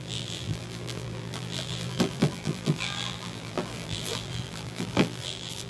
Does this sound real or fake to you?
fake